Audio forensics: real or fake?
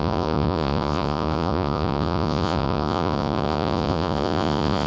fake